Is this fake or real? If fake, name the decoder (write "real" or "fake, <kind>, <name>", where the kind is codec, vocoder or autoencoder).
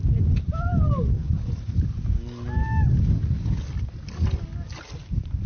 real